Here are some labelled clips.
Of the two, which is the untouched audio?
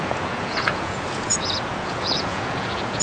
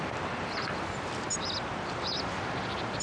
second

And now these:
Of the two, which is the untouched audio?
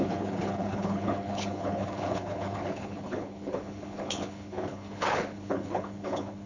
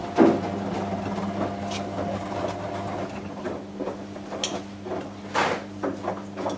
second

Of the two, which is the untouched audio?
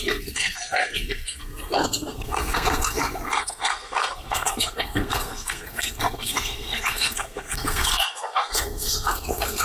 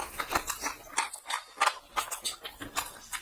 second